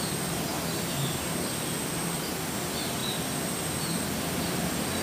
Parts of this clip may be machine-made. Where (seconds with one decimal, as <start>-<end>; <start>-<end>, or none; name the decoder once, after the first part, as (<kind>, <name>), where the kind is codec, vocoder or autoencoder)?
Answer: none

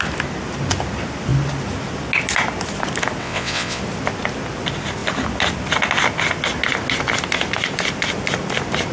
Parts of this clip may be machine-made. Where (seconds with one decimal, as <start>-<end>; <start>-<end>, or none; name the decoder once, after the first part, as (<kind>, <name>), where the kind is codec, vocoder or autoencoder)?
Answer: 3.2-3.8 (vocoder, WaveNeXt)

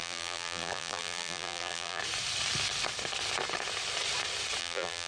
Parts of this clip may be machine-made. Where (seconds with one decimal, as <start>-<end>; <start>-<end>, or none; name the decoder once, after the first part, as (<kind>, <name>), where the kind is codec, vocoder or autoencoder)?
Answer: 0.0-2.0 (vocoder, BigVGAN v2); 4.6-5.1

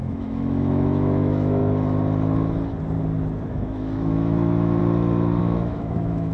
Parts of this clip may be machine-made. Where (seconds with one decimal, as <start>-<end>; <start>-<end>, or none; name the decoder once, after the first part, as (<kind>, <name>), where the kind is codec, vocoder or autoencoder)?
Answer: 0.0-1.6 (autoencoder, DAC-VAE); 3.5-4.8; 5.4-6.3